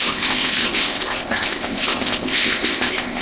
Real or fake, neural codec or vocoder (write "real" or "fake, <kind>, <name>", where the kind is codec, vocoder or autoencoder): fake, codec, ZipCodec